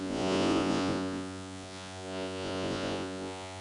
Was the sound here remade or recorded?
remade